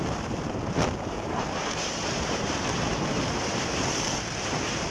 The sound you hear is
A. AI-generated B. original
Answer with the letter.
A